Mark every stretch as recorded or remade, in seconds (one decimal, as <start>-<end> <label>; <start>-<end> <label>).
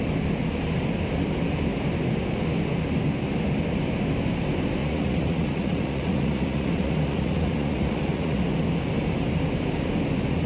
0.0-4.8 recorded; 4.8-8.4 remade; 8.4-10.5 recorded